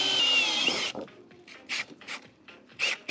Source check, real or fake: fake